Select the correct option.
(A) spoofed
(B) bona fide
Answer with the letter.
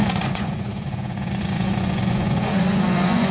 A